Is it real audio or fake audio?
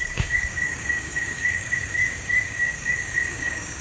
fake